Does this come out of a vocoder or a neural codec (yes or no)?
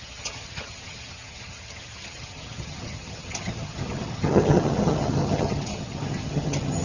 yes